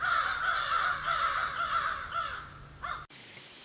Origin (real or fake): real